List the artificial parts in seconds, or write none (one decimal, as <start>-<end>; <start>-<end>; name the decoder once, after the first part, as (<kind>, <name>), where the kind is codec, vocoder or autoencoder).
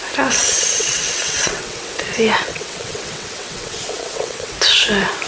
0.4-2.0 (vocoder, WaveNeXt); 2.5-4.5